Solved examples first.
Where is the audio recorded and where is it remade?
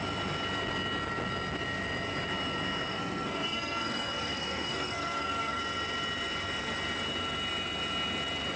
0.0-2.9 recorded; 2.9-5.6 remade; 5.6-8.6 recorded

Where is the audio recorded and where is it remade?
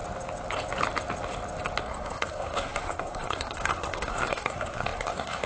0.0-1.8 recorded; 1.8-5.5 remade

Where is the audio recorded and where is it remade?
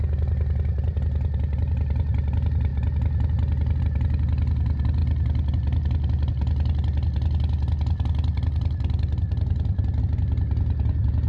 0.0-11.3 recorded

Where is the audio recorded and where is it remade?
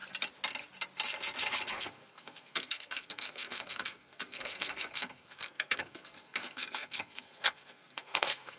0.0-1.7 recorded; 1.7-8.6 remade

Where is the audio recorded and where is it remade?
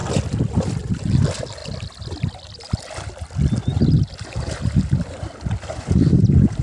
0.0-6.6 recorded